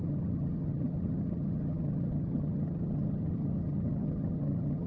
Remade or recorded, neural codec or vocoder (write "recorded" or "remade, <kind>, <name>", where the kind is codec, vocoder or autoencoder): remade, vocoder, HiFi-GAN